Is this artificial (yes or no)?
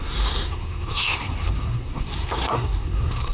yes